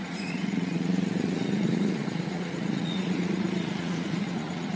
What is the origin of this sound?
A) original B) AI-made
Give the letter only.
B